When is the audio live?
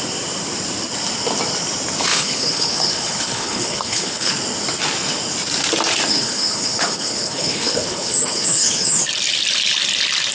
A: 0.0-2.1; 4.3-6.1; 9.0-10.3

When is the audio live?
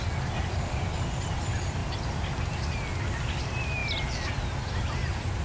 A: 0.0-5.4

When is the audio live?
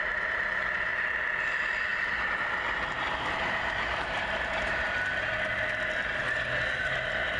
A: 0.0-7.4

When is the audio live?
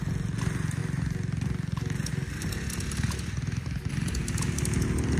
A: 0.0-5.2